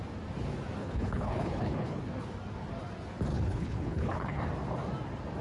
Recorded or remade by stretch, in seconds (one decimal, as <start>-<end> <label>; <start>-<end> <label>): 0.0-0.8 recorded; 0.8-2.0 remade; 2.0-3.3 recorded; 3.3-4.4 remade; 4.4-5.4 recorded